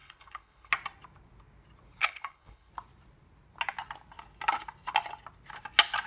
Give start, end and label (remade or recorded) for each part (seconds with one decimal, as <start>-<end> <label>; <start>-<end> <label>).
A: 0.0-0.7 remade; 0.7-2.0 recorded; 2.0-2.7 remade; 2.7-6.1 recorded